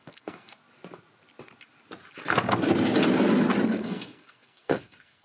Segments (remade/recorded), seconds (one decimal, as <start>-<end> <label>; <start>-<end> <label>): 0.0-0.6 remade; 0.6-3.7 recorded; 3.7-5.2 remade